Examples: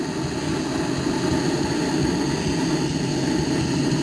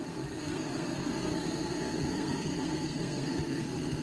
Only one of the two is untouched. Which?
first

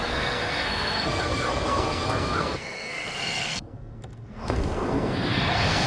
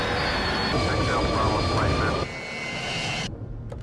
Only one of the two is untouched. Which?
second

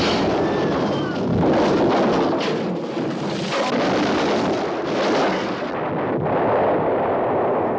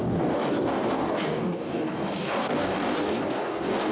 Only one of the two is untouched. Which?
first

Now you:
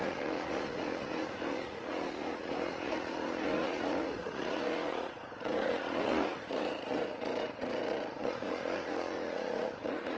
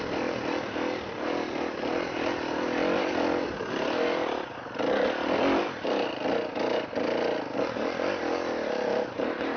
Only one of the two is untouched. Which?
second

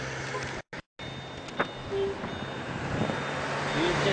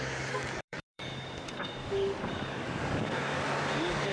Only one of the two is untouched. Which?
first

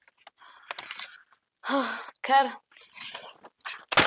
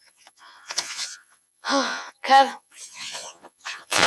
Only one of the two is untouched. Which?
first